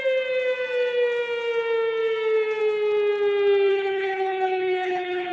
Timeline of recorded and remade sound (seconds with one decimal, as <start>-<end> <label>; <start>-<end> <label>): 0.0-3.7 recorded; 3.7-5.3 remade